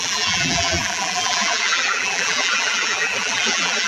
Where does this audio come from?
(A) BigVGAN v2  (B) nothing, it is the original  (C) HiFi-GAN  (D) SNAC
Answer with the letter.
A